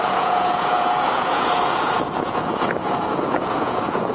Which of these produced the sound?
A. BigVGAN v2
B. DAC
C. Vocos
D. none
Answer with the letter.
C